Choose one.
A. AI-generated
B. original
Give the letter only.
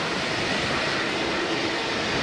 A